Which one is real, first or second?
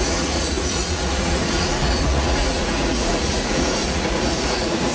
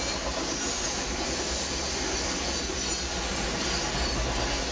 second